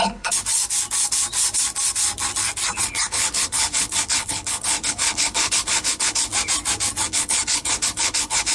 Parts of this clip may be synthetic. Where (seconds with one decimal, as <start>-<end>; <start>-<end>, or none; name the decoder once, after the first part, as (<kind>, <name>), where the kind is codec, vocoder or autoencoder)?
0.0-0.6 (codec, HILCodec); 2.8-6.3; 7.0-8.5